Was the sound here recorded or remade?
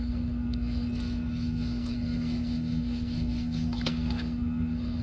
remade